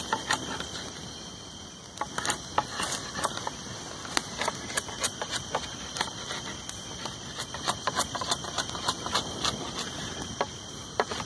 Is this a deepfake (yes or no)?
no